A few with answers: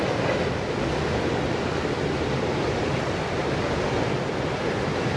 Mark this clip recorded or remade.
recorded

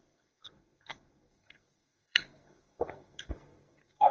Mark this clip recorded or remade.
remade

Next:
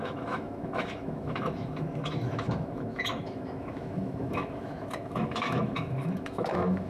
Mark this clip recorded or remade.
remade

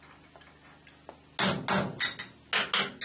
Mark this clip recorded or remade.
recorded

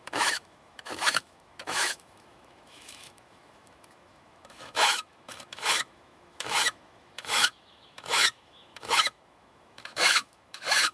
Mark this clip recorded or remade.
remade